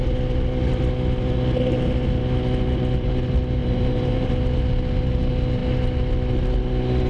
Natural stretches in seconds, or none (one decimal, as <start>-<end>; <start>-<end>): 0.0-3.6; 4.3-7.1